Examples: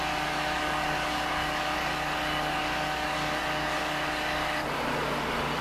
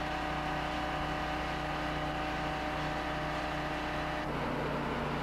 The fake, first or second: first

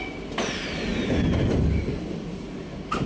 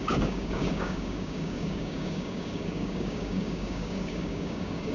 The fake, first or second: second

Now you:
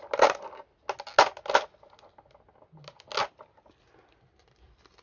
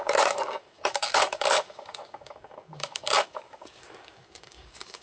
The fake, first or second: second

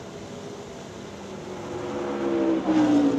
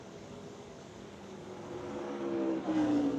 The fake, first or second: second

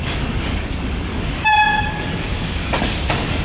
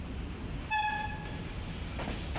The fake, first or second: first